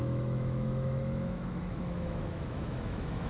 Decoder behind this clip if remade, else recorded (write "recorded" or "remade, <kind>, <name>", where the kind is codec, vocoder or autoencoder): remade, autoencoder, DAC-VAE